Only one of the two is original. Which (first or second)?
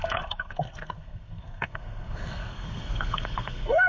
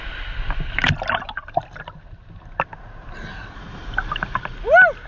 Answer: second